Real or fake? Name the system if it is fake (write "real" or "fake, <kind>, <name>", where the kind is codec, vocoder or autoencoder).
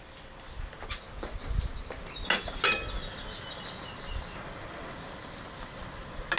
real